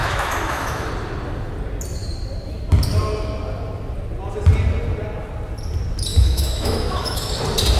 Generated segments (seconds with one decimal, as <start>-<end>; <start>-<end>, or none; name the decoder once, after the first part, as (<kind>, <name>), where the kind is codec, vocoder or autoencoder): 0.0-0.9 (autoencoder, DAC-VAE); 6.1-7.3